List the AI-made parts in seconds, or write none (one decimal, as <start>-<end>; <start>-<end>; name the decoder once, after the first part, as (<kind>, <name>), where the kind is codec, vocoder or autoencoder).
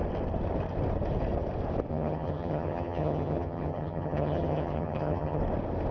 1.9-5.4 (vocoder, HiFi-GAN)